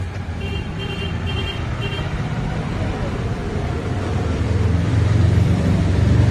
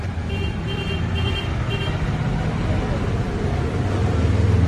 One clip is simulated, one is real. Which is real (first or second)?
second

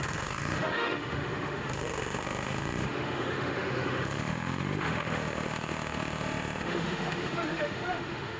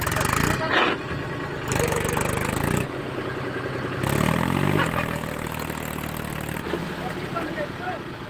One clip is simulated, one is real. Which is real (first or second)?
second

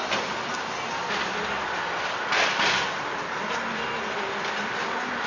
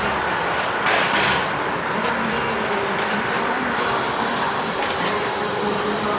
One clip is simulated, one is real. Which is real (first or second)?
first